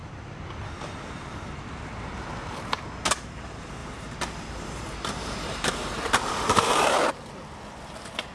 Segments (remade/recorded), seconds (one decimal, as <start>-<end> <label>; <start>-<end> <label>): 0.0-3.8 recorded; 3.8-7.1 remade; 7.1-8.3 recorded